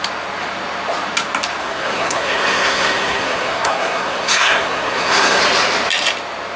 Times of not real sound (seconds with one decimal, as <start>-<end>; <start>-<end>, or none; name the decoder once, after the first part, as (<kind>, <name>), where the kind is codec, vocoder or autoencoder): 1.6-5.4 (codec, SNAC)